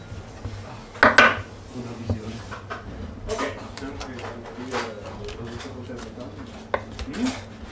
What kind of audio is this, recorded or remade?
recorded